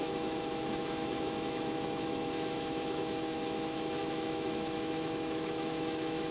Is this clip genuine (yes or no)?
no